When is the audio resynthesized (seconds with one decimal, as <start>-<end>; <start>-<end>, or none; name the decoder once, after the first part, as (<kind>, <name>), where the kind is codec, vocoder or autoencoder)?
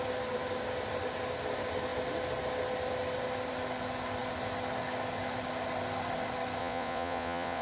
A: 6.6-7.6 (vocoder, Vocos)